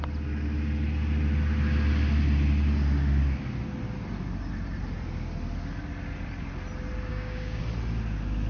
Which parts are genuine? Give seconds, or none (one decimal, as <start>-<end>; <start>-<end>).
0.0-7.1; 7.6-8.5